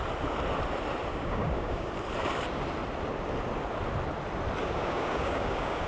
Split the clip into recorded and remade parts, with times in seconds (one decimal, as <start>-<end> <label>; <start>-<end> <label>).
0.0-1.1 recorded; 1.1-1.9 remade; 1.9-4.6 recorded; 4.6-5.9 remade